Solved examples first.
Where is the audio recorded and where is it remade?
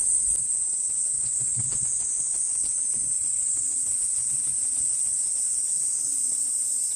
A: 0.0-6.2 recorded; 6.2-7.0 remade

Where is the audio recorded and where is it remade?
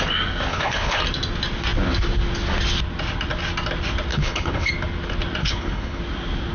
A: 0.0-0.5 recorded; 0.5-1.0 remade; 1.0-4.1 recorded; 4.1-4.7 remade; 4.7-5.4 recorded; 5.4-6.0 remade; 6.0-6.5 recorded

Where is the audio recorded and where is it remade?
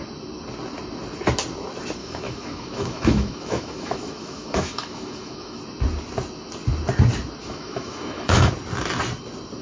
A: 0.0-2.0 recorded; 2.0-5.6 remade; 5.6-7.4 recorded; 7.4-8.5 remade; 8.5-9.6 recorded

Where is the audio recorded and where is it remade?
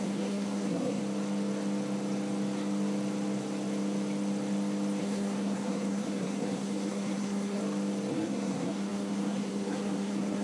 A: 0.0-1.0 remade; 1.0-5.0 recorded; 5.0-7.6 remade; 7.6-8.1 recorded; 8.1-10.4 remade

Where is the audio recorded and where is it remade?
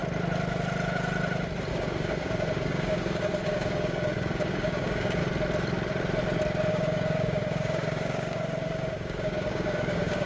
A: 0.0-1.7 recorded; 1.7-5.2 remade; 5.2-6.7 recorded; 6.7-10.3 remade